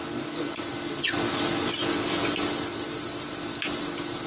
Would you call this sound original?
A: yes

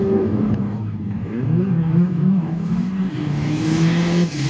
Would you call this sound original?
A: no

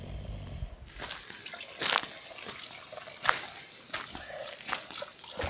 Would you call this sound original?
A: yes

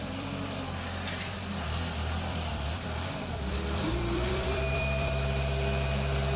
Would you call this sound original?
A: no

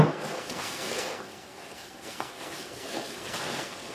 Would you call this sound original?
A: no